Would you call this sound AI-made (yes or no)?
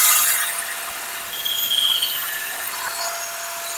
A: no